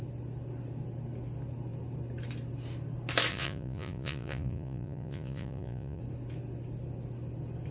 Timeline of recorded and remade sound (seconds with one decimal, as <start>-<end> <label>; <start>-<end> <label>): 0.0-3.3 recorded; 3.3-6.0 remade; 6.0-7.7 recorded